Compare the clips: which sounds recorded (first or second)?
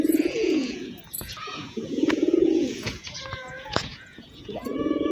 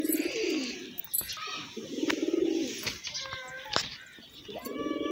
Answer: second